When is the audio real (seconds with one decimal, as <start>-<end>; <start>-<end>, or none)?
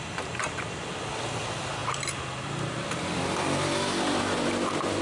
0.0-5.0